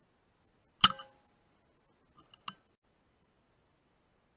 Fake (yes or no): no